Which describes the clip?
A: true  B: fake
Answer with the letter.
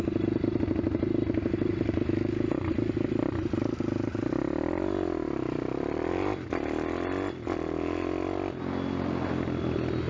A